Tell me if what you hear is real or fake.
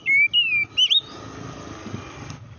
real